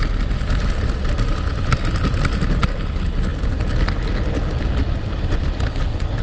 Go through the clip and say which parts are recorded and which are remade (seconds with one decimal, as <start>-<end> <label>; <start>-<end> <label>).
0.0-6.2 recorded

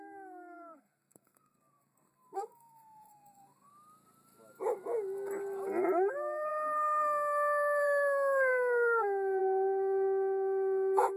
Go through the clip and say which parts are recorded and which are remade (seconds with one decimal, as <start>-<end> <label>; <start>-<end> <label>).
0.0-3.7 remade; 3.7-6.1 recorded; 6.1-11.2 remade

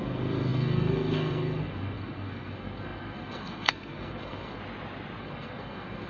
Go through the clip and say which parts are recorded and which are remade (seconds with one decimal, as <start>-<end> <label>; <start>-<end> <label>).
0.0-4.6 remade; 4.6-5.2 recorded; 5.2-6.1 remade

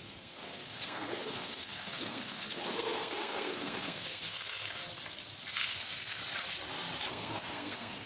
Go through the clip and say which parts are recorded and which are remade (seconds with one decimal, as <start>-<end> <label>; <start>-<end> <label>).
0.0-4.8 remade; 4.8-5.5 recorded; 5.5-6.2 remade; 6.2-7.1 recorded; 7.1-8.1 remade

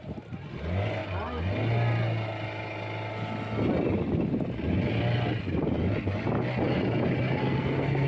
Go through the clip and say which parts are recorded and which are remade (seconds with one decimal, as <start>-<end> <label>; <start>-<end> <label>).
0.0-7.4 recorded; 7.4-8.1 remade

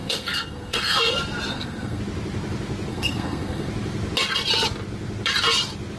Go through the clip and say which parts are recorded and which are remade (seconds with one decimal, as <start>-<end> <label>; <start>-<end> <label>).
0.0-1.1 remade; 1.1-1.5 recorded; 1.5-2.0 remade; 2.0-2.9 recorded; 2.9-3.7 remade; 3.7-6.0 recorded

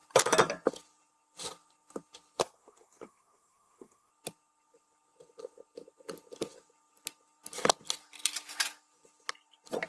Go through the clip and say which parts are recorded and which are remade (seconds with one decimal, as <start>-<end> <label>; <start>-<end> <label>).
0.0-2.4 recorded; 2.4-4.1 remade; 4.1-9.9 recorded